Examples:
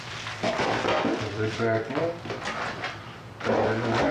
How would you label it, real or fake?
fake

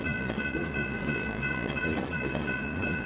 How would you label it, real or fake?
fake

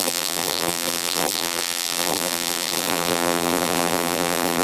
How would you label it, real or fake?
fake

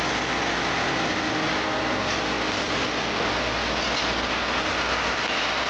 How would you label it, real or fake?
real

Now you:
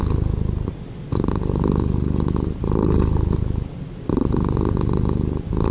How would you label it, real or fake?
real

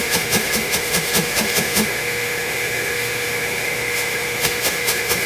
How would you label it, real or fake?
fake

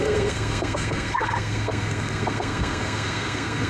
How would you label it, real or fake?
fake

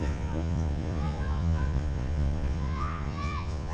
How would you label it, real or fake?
fake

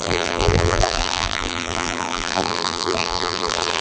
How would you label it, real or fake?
fake